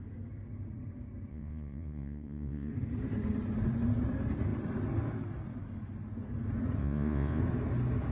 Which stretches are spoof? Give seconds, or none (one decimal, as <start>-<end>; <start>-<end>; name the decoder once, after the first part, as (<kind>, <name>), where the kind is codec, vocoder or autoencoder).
1.3-2.7 (vocoder, Vocos); 6.8-7.4